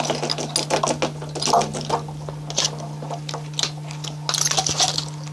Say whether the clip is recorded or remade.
recorded